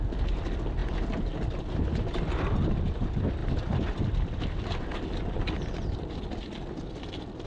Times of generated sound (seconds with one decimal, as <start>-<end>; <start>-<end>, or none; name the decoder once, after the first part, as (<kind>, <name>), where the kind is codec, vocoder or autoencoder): 3.4-6.4 (vocoder, BigVGAN v2)